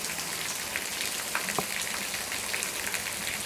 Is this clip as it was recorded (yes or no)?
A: yes